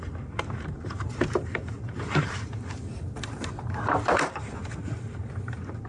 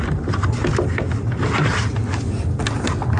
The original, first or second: second